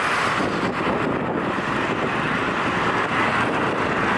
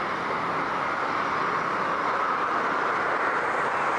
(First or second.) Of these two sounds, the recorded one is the first